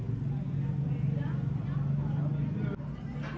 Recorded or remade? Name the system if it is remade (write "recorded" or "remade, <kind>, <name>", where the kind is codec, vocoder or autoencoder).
recorded